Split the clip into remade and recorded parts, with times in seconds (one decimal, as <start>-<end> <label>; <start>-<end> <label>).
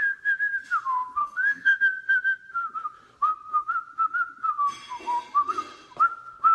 0.0-1.2 recorded; 1.2-1.8 remade; 1.8-6.5 recorded